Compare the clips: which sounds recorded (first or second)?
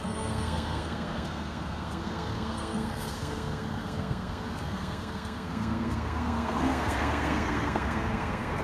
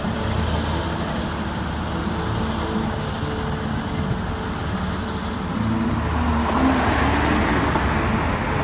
second